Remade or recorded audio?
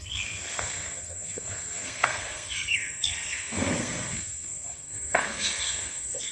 remade